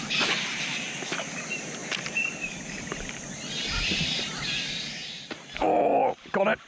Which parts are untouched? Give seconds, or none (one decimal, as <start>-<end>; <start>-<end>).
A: 0.0-6.7